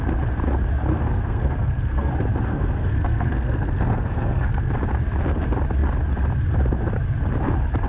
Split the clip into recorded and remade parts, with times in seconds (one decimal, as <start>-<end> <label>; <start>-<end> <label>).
0.0-0.9 recorded; 0.9-2.1 remade; 2.1-2.5 recorded; 2.5-4.7 remade; 4.7-7.9 recorded